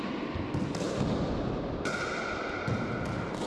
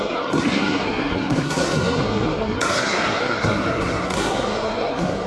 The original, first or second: first